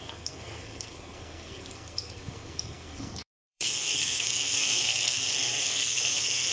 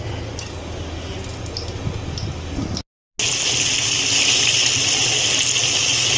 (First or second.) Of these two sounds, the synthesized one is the first